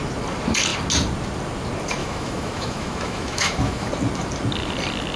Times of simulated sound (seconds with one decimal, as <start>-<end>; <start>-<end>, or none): 2.0-3.9